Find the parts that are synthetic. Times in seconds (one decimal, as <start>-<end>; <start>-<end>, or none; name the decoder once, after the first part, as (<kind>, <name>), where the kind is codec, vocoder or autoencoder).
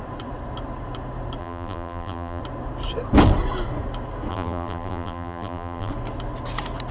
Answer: 1.4-2.4 (vocoder, BigVGAN v2); 4.3-5.9